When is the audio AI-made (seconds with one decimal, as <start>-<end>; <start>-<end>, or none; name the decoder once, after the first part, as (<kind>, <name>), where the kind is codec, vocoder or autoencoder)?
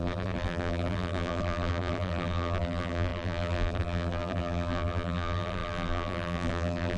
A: 0.0-7.0 (vocoder, BigVGAN v2)